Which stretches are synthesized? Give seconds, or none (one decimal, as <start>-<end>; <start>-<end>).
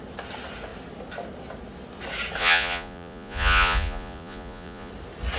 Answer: 2.4-4.9